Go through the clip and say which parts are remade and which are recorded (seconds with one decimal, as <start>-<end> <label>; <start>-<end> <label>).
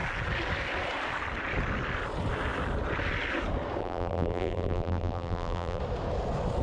0.0-3.8 recorded; 3.8-5.8 remade; 5.8-6.6 recorded